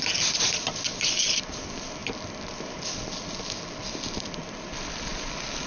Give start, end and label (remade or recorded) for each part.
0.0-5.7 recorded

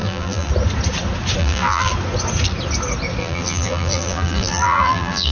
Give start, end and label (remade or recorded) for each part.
0.0-0.5 remade; 0.5-1.4 recorded; 1.4-1.9 remade; 1.9-3.2 recorded; 3.2-5.3 remade

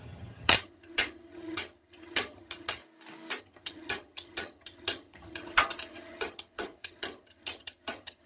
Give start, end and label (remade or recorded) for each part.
0.0-2.8 remade; 2.8-3.4 recorded; 3.4-8.3 remade

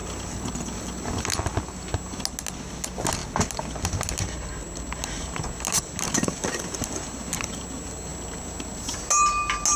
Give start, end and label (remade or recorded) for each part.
0.0-9.8 recorded

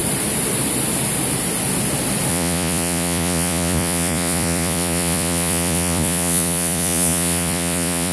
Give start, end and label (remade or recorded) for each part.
0.0-2.3 recorded; 2.3-8.1 remade

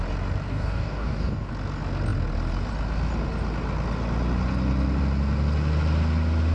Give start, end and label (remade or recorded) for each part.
0.0-0.5 recorded; 0.5-1.5 remade; 1.5-6.5 recorded

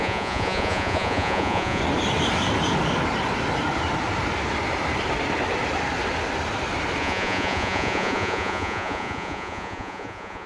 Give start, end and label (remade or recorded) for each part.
0.0-1.8 remade; 1.8-7.0 recorded; 7.0-10.5 remade

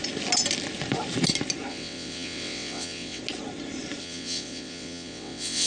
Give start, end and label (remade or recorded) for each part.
0.0-1.7 recorded; 1.7-3.2 remade; 3.2-4.0 recorded; 4.0-5.7 remade